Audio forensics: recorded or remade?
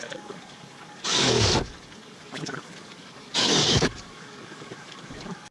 remade